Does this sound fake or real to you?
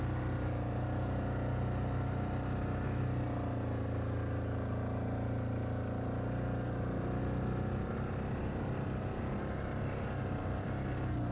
real